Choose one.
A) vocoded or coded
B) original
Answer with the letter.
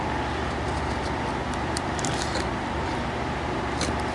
A